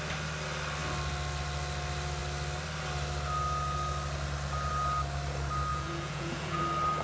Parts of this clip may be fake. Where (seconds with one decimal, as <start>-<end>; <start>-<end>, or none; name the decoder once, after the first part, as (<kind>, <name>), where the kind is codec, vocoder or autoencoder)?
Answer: 5.7-6.6 (vocoder, Vocos)